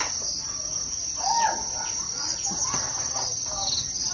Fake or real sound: real